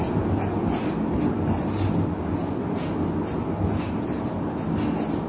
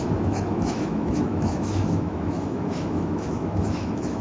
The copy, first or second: second